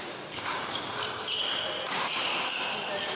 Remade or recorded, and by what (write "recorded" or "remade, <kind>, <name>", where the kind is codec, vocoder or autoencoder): recorded